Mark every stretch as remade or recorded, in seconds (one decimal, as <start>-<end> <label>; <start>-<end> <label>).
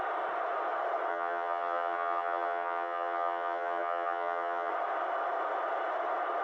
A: 0.0-1.1 recorded; 1.1-4.7 remade; 4.7-6.4 recorded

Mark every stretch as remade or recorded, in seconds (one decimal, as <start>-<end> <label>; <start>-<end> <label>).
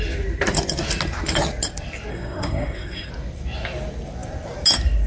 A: 0.0-2.1 recorded; 2.1-3.1 remade; 3.1-5.1 recorded